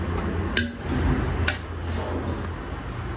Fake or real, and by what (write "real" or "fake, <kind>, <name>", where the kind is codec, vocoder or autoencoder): real